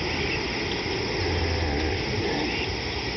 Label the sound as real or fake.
real